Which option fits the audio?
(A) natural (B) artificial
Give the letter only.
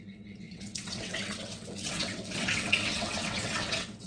B